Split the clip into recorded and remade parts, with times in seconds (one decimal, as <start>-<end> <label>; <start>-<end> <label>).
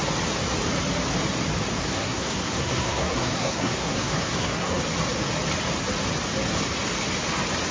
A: 0.0-1.8 recorded; 1.8-4.8 remade; 4.8-7.7 recorded